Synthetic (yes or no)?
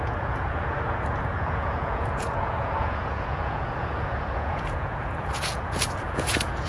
yes